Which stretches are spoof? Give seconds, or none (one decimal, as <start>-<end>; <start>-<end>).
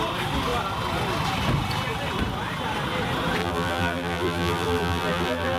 3.4-5.6